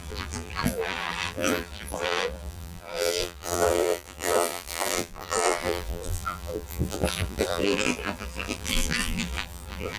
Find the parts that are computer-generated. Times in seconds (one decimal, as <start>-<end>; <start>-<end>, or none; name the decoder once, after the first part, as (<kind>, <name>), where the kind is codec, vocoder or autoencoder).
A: 0.0-10.0 (vocoder, BigVGAN v2)